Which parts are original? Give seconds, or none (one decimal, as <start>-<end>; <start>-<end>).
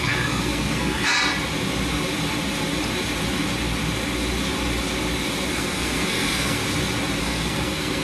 1.1-5.5; 6.6-7.2